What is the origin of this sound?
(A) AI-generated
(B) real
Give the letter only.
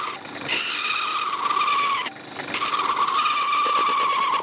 B